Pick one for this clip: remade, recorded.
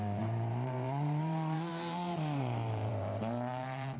remade